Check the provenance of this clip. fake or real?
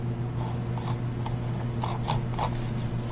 real